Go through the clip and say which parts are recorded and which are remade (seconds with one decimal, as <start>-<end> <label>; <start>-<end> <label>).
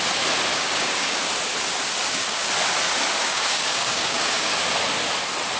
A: 0.0-0.5 recorded; 0.5-1.3 remade; 1.3-2.0 recorded; 2.0-2.5 remade; 2.5-3.2 recorded; 3.2-4.5 remade; 4.5-5.6 recorded